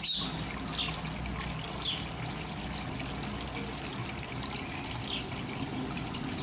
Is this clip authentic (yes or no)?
yes